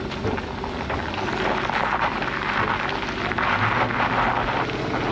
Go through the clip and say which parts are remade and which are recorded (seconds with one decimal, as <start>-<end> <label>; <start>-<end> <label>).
0.0-5.1 recorded